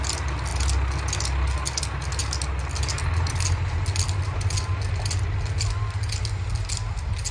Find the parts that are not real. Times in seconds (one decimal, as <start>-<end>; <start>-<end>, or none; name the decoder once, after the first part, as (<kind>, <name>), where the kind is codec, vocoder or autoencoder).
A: none